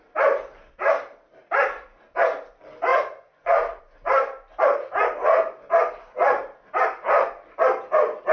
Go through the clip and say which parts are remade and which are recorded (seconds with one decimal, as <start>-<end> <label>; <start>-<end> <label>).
0.0-2.9 recorded; 2.9-3.8 remade; 3.8-8.3 recorded